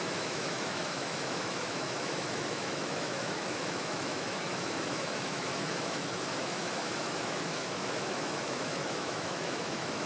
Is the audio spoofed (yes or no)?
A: yes